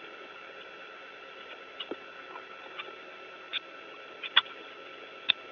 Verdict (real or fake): real